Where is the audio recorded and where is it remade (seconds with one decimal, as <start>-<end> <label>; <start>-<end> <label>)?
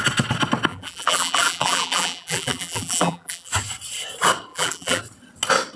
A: 0.0-0.7 recorded; 0.7-3.5 remade; 3.5-4.5 recorded; 4.5-5.0 remade; 5.0-5.8 recorded